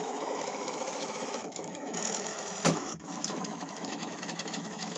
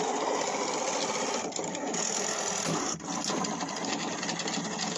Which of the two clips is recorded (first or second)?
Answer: second